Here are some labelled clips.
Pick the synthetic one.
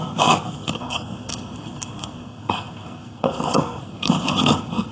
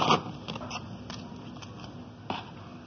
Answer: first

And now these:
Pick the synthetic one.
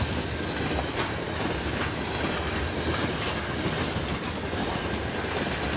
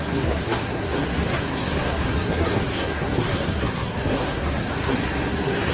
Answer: second